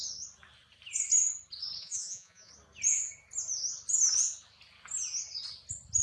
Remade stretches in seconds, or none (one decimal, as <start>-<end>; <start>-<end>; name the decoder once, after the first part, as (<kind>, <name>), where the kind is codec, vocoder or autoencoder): 1.8-2.5 (vocoder, Vocos)